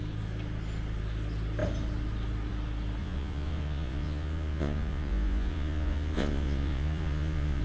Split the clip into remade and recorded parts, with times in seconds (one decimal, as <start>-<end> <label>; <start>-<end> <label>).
0.0-3.0 recorded; 3.0-7.6 remade